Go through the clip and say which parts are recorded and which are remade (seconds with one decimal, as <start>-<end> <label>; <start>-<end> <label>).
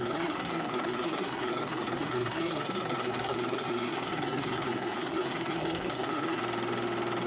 0.0-6.4 remade; 6.4-7.3 recorded